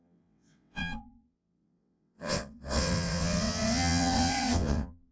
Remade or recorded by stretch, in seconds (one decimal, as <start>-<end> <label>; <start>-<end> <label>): 0.0-5.1 remade